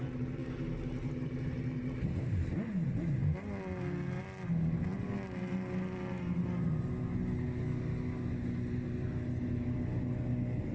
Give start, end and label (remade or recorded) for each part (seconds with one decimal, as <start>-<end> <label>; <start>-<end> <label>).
0.0-10.7 recorded